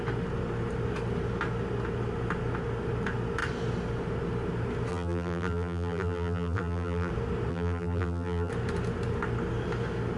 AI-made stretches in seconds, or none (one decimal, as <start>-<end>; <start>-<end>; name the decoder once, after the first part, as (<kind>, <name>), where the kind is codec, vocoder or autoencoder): 4.9-7.1 (vocoder, BigVGAN v2); 7.5-8.5